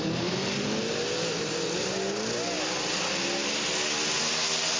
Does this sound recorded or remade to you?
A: recorded